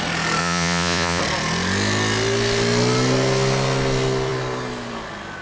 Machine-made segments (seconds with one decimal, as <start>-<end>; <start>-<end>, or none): 0.4-1.2